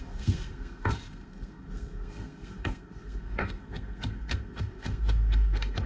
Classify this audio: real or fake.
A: fake